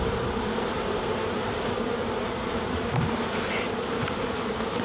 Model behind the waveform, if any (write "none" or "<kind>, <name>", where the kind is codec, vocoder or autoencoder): vocoder, BigVGAN v2